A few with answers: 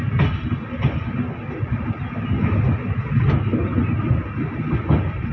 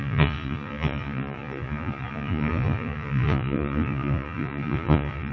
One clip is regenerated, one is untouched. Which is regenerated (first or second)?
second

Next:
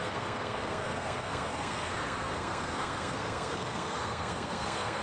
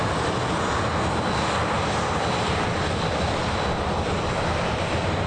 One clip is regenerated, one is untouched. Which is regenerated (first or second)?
first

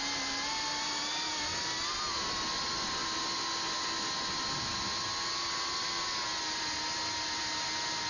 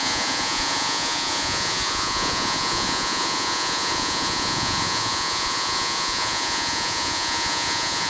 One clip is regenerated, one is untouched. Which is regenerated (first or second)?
second